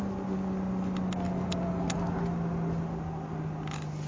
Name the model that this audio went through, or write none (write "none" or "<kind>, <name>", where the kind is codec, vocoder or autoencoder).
none